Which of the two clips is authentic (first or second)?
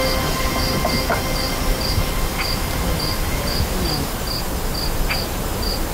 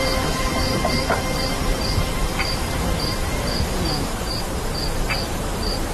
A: first